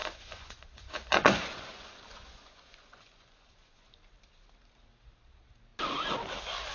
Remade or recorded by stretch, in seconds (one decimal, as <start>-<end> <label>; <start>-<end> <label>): 0.0-4.0 remade; 4.0-6.7 recorded